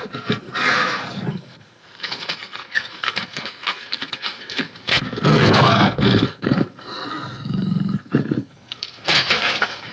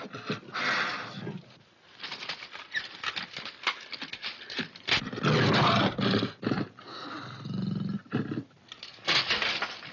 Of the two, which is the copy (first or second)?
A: first